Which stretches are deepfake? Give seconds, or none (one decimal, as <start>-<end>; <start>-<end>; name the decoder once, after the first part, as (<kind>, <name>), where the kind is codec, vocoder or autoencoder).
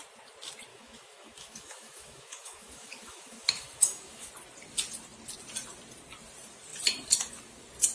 0.7-4.3 (autoencoder, DAC-VAE)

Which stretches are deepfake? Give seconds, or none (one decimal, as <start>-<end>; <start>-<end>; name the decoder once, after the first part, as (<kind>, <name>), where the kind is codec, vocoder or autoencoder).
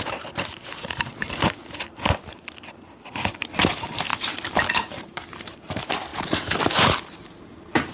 0.0-1.6 (vocoder, BigVGAN v2); 2.2-7.9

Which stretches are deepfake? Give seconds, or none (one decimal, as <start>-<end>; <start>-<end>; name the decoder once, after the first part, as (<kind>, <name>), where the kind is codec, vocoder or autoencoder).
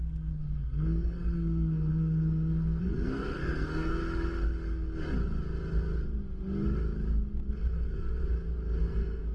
0.0-4.0 (codec, SNAC); 7.5-8.2; 8.8-9.3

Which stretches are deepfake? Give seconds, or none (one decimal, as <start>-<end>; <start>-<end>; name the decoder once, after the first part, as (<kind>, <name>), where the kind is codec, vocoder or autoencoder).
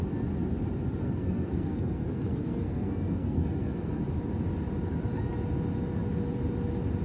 1.0-4.0 (codec, SNAC)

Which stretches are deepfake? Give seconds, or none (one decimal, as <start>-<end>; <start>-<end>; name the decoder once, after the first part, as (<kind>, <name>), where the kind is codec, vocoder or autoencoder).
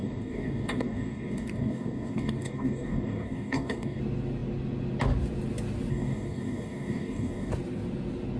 0.0-4.0 (codec, DAC); 5.9-7.5